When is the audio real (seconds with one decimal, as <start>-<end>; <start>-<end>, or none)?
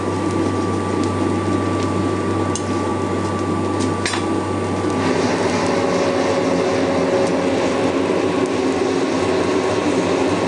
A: 0.0-10.5